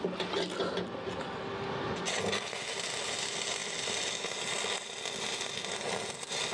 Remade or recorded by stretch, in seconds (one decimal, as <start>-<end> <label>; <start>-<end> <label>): 0.0-6.5 recorded